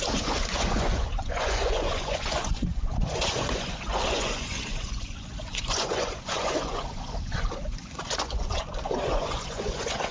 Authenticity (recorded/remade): remade